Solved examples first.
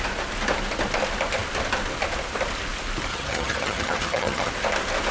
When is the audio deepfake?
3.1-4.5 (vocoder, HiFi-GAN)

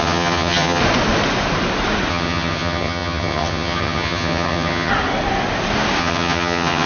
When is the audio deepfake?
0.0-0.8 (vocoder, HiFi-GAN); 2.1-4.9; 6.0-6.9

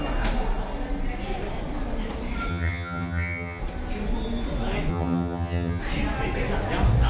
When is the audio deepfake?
2.5-3.6 (vocoder, HiFi-GAN); 4.9-5.8

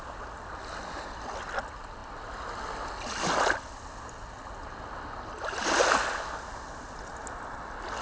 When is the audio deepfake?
none

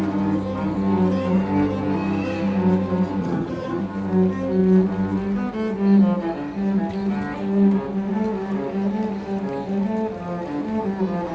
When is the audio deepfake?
3.2-3.8 (vocoder, HiFi-GAN)

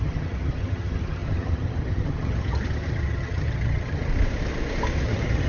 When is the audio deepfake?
0.0-4.1 (vocoder, HiFi-GAN); 5.0-5.5